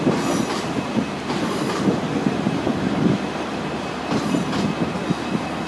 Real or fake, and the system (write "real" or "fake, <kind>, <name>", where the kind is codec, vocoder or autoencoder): real